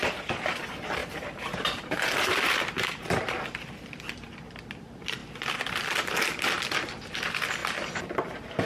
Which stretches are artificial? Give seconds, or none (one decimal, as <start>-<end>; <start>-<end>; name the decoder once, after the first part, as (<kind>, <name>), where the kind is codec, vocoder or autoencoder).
1.0-3.4 (vocoder, BigVGAN v2)